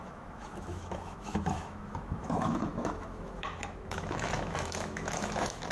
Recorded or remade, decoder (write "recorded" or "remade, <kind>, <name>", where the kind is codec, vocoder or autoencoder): remade, autoencoder, DAC-VAE